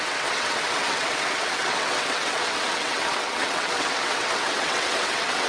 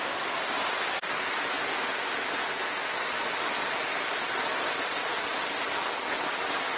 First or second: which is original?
second